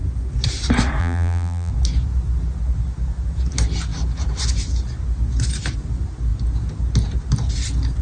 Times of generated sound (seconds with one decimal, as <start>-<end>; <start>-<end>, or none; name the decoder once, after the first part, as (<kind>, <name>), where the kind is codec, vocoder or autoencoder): 1.0-1.7 (vocoder, BigVGAN v2)

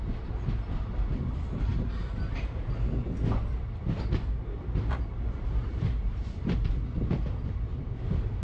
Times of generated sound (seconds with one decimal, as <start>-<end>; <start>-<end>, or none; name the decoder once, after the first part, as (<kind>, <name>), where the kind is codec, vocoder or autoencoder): 1.7-6.7 (vocoder, BigVGAN v2)

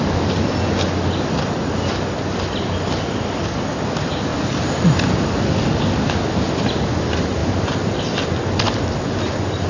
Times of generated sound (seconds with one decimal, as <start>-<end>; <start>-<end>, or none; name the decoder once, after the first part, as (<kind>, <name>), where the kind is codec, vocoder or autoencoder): 4.3-5.8 (vocoder, BigVGAN v2); 7.4-8.0

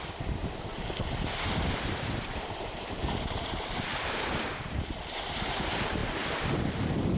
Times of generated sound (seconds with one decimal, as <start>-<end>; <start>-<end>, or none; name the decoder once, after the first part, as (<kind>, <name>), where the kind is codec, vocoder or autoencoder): 0.0-0.4 (vocoder, BigVGAN v2); 1.3-7.2

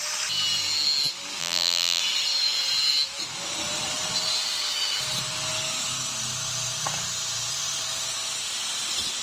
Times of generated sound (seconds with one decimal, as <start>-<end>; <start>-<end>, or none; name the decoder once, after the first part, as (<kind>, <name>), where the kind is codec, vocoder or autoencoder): 1.4-2.0 (vocoder, BigVGAN v2)